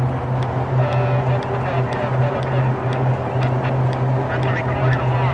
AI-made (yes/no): no